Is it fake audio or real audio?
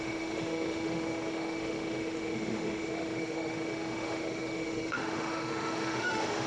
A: fake